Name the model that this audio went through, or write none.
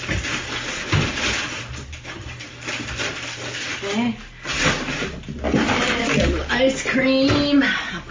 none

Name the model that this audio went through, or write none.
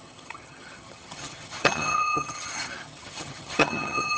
vocoder, HiFi-GAN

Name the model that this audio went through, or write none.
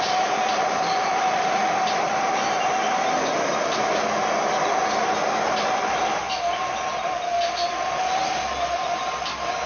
none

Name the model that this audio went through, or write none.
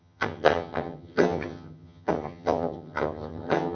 vocoder, HiFi-GAN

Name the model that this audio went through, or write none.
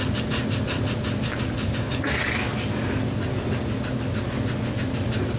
none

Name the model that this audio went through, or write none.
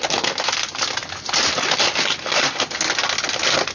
none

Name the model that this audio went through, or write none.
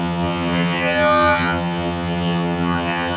vocoder, HiFi-GAN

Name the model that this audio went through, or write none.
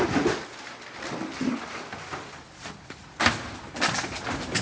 none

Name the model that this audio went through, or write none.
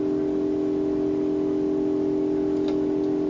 none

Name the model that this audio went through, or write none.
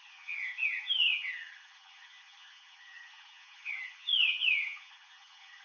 vocoder, HiFi-GAN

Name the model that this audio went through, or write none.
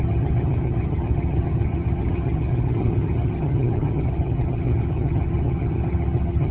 vocoder, HiFi-GAN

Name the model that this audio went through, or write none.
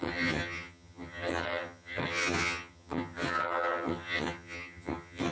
vocoder, HiFi-GAN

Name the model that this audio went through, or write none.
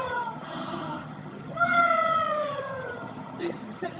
vocoder, HiFi-GAN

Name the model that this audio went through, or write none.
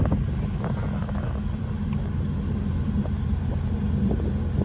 none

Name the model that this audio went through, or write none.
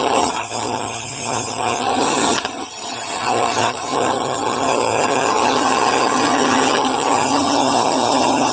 vocoder, HiFi-GAN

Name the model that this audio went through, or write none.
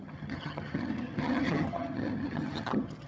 vocoder, HiFi-GAN